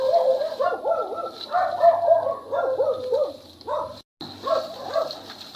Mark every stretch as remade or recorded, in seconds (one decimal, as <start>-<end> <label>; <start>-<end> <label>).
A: 0.0-5.6 recorded